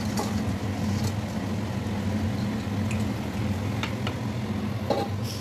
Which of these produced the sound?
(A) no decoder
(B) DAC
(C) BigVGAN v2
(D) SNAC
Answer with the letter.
A